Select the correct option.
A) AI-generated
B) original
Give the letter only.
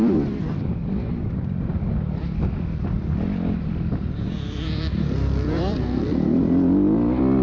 A